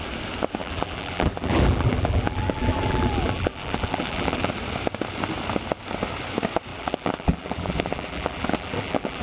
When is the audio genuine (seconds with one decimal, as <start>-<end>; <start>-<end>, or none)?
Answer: 0.0-0.6; 4.5-6.7